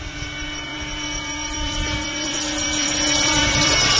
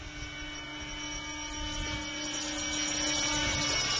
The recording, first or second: second